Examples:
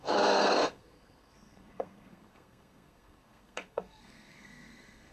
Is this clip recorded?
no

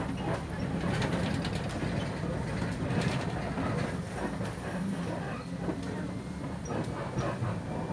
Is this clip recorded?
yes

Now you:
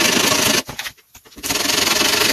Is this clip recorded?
yes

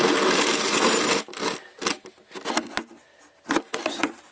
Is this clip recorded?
yes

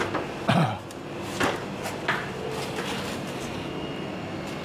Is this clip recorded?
yes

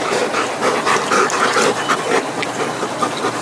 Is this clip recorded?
yes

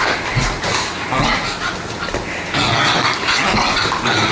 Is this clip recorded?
yes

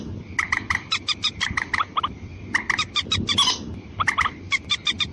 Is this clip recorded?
yes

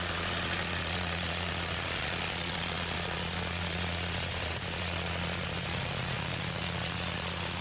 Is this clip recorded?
no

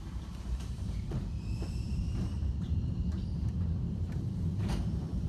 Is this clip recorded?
no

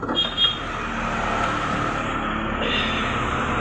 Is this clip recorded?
yes